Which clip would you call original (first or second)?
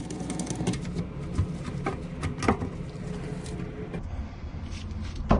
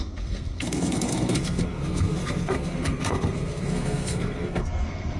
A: first